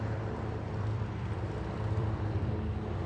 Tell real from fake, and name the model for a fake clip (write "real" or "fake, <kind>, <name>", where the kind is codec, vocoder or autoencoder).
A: fake, vocoder, BigVGAN v2